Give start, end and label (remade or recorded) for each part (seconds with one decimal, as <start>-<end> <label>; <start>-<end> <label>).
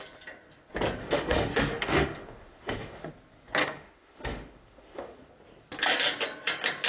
0.0-1.0 recorded; 1.0-3.1 remade; 3.1-3.6 recorded; 3.6-5.3 remade; 5.3-6.9 recorded